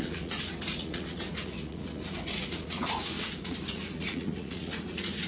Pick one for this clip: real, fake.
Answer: fake